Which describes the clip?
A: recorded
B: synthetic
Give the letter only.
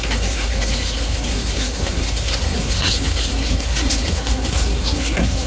B